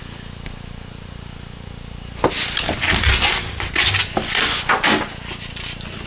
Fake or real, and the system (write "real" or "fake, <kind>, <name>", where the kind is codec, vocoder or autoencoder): real